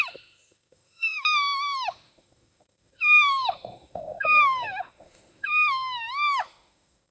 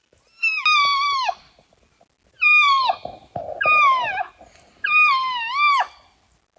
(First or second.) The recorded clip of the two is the second